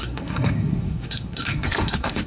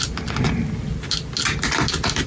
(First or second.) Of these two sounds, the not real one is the first